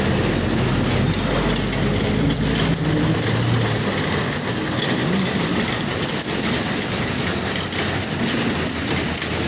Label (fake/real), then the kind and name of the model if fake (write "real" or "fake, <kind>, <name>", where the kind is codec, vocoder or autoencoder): real